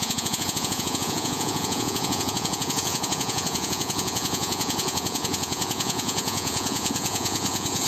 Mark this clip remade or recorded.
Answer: remade